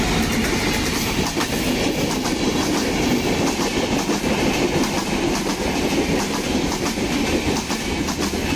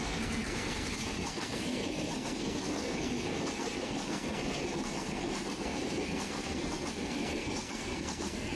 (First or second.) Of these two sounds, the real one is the first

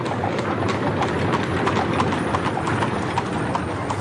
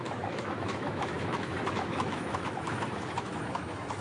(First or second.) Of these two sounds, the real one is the first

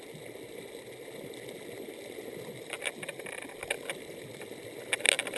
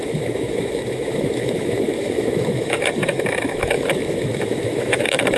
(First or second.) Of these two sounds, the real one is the first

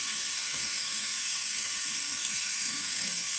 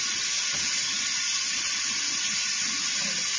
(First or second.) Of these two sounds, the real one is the second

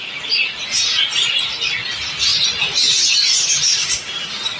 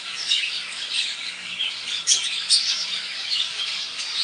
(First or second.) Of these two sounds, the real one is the first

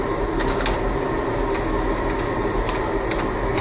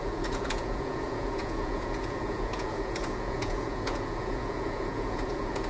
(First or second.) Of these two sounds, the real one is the first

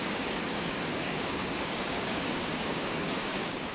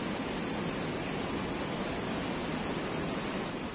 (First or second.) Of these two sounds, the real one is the second